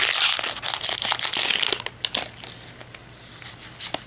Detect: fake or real real